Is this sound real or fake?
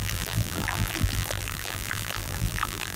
fake